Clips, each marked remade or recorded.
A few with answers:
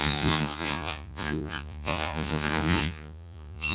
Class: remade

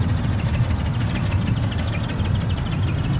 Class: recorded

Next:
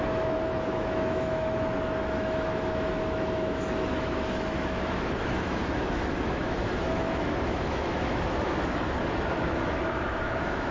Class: remade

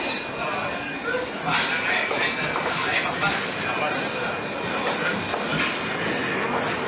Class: recorded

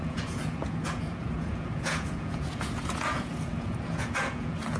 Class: remade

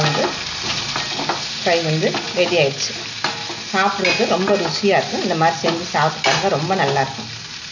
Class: recorded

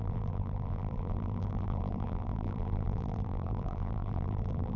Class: remade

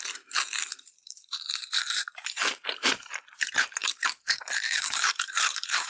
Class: remade